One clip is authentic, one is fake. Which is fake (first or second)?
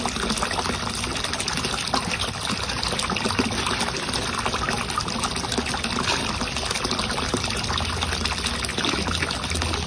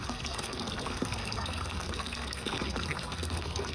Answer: second